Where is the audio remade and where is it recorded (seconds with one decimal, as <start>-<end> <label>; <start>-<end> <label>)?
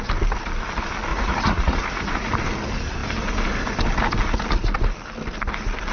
0.0-1.1 recorded; 1.1-2.3 remade; 2.3-5.9 recorded